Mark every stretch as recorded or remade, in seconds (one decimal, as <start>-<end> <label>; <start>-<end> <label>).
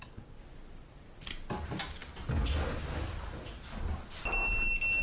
0.0-5.0 recorded